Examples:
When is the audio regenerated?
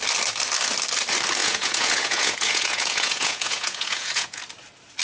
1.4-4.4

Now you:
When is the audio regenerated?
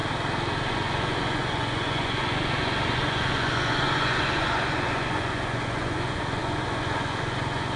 0.7-7.8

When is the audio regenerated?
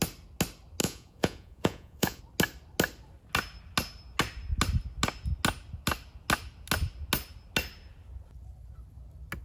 0.8-2.2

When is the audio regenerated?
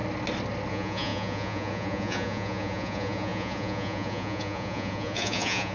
0.7-5.7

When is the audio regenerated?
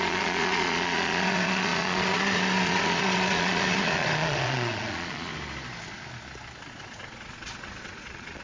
0.0-5.3; 6.7-8.4